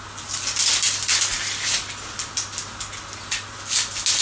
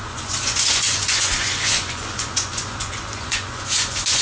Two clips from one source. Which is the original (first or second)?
first